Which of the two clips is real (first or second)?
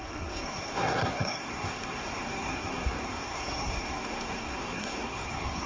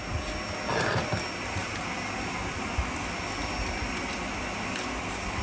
second